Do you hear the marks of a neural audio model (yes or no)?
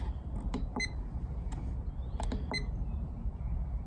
no